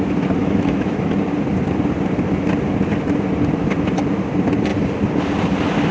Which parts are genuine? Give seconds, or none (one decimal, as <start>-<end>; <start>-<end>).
0.0-0.4; 1.1-5.9